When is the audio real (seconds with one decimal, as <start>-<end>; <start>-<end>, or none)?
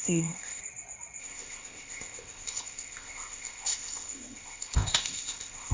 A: 0.6-1.2